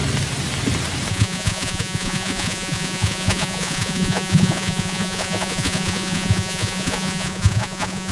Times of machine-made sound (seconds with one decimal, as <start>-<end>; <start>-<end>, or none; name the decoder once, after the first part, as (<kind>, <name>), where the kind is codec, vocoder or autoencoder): 1.1-8.1 (vocoder, Vocos)